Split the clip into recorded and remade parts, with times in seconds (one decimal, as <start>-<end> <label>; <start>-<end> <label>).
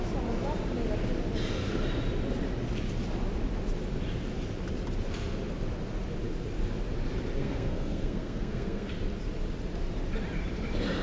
0.0-7.4 recorded; 7.4-8.9 remade; 8.9-11.0 recorded